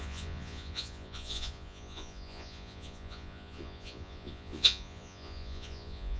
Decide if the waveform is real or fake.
fake